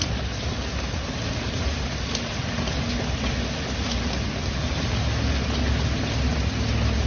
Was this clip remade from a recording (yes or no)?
no